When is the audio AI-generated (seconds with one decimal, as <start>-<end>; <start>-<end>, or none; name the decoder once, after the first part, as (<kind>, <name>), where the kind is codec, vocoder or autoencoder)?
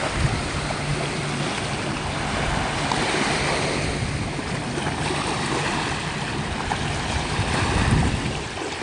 none